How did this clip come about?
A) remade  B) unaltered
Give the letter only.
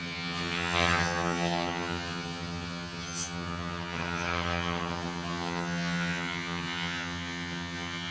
A